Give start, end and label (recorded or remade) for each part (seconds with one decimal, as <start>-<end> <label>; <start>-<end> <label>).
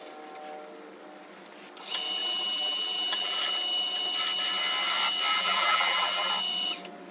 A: 0.0-2.2 recorded; 2.2-3.4 remade; 3.4-5.3 recorded; 5.3-6.3 remade; 6.3-7.1 recorded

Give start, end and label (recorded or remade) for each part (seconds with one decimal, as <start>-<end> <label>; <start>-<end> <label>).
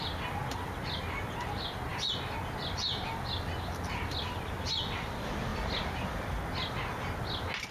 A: 0.0-7.7 recorded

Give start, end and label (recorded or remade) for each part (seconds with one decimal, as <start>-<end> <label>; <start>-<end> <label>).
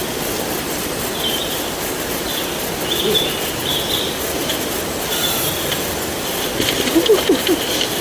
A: 0.0-0.9 remade; 0.9-4.5 recorded; 4.5-6.9 remade; 6.9-7.4 recorded; 7.4-8.0 remade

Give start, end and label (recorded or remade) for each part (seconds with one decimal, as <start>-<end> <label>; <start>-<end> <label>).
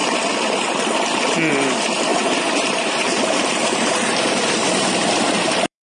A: 0.0-2.1 recorded; 2.1-5.9 remade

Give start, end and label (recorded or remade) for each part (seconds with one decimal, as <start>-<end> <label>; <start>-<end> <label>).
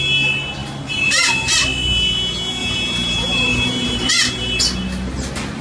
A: 0.0-0.6 recorded; 0.6-1.5 remade; 1.5-2.6 recorded; 2.6-4.1 remade; 4.1-5.6 recorded